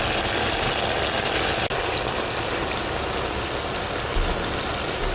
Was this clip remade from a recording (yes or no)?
no